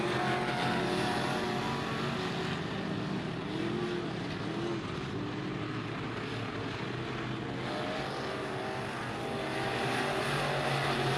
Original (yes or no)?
yes